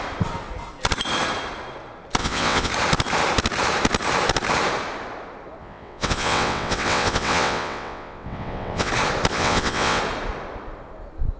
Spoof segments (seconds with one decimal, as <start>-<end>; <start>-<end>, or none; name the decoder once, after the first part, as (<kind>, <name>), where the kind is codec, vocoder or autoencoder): 2.2-2.7 (vocoder, WaveNeXt); 5.6-8.9; 9.3-10.0